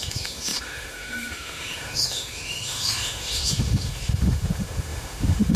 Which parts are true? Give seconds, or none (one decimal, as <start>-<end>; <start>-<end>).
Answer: none